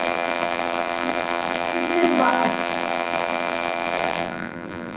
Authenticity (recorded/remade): remade